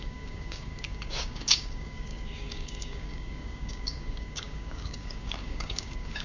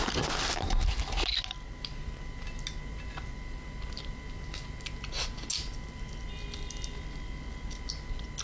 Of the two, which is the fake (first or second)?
first